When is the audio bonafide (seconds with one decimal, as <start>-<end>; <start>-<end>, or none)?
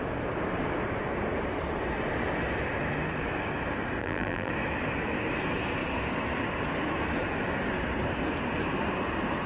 0.0-4.0; 4.5-9.5